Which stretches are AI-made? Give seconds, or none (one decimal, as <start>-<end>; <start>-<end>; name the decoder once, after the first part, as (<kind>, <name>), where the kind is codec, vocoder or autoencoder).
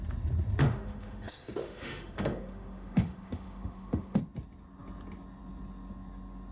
0.6-4.2 (autoencoder, DAC-VAE)